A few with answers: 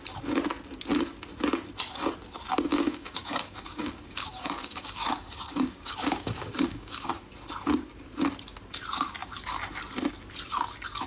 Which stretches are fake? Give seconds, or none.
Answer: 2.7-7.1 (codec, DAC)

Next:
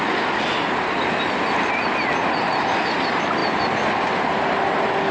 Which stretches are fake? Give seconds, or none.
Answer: none

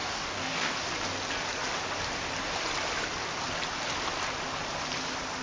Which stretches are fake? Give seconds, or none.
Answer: 0.0-0.8 (codec, DAC)

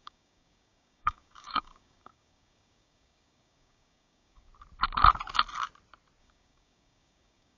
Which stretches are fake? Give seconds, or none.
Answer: 0.0-4.5 (codec, DAC); 6.2-7.6